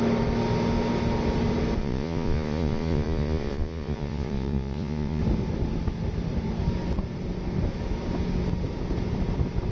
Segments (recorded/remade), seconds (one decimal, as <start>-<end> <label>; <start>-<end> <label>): 0.0-1.8 recorded; 1.8-5.2 remade; 5.2-9.7 recorded